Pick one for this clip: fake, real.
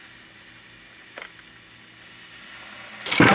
real